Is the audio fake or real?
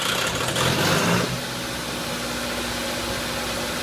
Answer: real